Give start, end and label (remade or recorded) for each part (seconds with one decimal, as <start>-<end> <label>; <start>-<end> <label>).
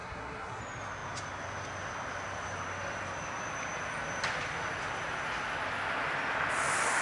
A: 0.0-0.6 remade; 0.6-7.0 recorded